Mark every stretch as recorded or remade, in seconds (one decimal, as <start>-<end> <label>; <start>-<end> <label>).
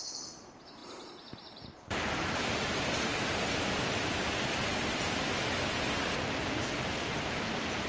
0.0-5.4 remade; 5.4-6.3 recorded; 6.3-7.9 remade